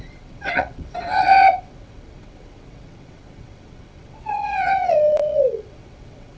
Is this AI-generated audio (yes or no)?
yes